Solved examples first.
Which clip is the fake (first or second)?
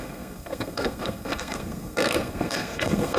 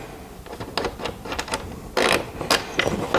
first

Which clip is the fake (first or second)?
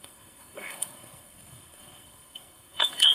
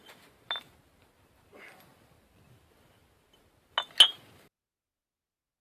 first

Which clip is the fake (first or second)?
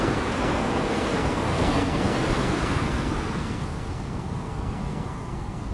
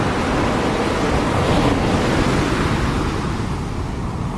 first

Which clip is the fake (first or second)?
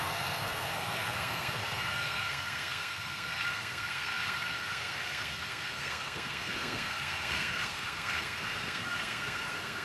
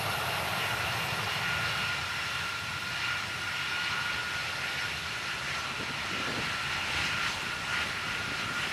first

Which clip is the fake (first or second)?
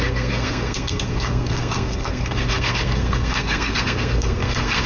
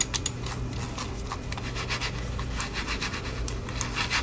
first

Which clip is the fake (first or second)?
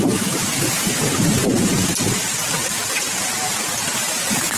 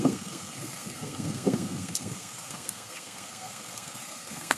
second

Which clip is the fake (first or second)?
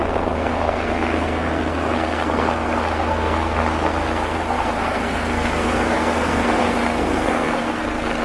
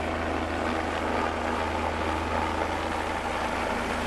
first